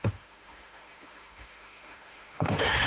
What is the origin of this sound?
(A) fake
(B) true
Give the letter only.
A